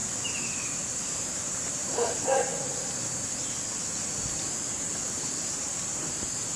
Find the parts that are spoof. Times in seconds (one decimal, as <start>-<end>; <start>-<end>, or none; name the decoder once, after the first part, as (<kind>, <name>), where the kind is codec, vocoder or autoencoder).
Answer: 1.0-2.5 (vocoder, BigVGAN v2); 5.4-6.6